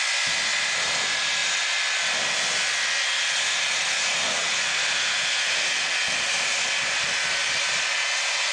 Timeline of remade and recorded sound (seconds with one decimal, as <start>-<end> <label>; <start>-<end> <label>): 0.0-8.5 recorded